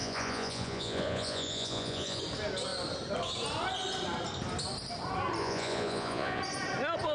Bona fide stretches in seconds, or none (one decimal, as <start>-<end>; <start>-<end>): 2.2-5.4; 6.4-7.1